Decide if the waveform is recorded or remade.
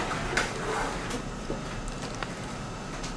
recorded